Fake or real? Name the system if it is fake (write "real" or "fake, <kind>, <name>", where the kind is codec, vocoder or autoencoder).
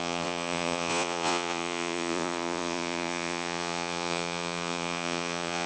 fake, vocoder, Vocos